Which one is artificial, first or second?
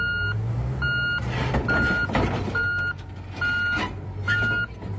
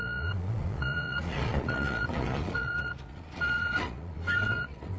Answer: second